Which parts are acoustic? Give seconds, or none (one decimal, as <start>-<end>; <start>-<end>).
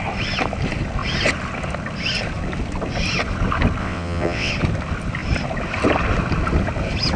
0.0-3.8; 4.5-7.2